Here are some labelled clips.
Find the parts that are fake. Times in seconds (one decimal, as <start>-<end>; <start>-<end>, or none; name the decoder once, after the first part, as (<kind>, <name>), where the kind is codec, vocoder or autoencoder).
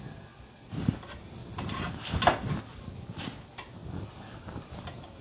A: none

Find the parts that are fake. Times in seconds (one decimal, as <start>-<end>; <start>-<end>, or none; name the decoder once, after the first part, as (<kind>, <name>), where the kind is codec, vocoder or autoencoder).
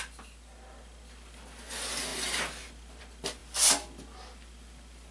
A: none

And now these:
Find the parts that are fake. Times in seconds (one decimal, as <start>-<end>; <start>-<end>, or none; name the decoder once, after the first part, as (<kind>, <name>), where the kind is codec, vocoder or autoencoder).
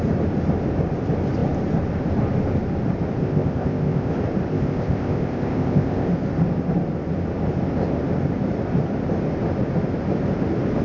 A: 3.2-4.1 (codec, ZipCodec); 4.5-6.1